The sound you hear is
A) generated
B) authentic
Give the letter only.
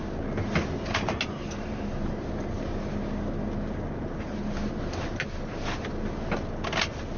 B